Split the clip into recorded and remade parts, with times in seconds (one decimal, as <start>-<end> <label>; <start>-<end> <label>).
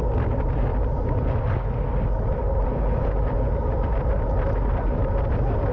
0.0-5.7 recorded